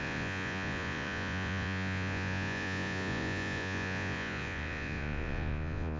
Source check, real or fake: fake